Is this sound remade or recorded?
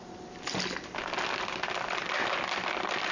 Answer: recorded